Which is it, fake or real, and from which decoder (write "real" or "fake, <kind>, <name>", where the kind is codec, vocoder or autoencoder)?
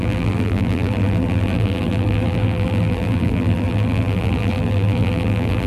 fake, vocoder, BigVGAN v2